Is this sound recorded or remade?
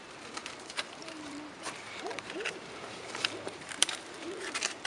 remade